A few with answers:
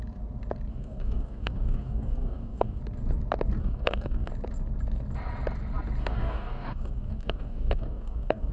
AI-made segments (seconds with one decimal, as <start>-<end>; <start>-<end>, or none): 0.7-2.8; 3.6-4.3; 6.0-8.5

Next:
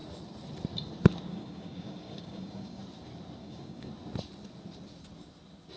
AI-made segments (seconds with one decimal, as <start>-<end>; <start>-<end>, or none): 1.3-2.8; 3.4-3.9

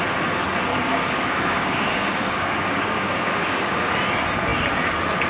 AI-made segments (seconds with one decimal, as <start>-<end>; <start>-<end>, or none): 0.7-3.9

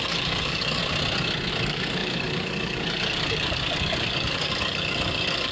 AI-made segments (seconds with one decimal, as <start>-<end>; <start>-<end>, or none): 0.0-0.8; 1.5-5.5

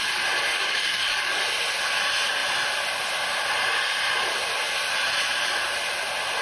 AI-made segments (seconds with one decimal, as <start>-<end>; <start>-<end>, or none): 0.5-1.4

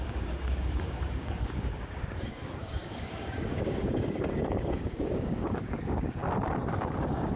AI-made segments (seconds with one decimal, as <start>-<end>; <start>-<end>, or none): 0.0-6.2; 6.7-7.4

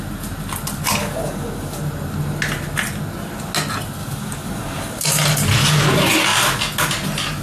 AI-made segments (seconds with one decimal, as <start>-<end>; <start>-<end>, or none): 1.0-1.8; 4.0-5.1